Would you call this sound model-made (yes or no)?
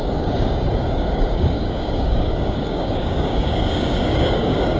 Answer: yes